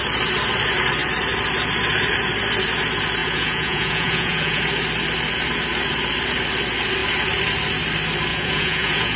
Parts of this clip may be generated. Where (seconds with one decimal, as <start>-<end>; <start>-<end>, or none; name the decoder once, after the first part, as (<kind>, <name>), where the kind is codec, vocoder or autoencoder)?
3.2-4.6 (vocoder, Vocos); 8.3-9.2